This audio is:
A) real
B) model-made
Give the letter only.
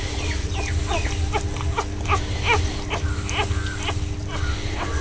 A